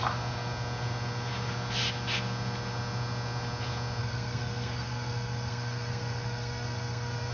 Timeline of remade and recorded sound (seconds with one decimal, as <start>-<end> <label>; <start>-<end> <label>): 0.0-4.0 recorded; 4.0-7.3 remade